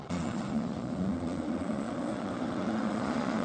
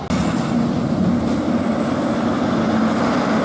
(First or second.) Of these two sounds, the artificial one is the first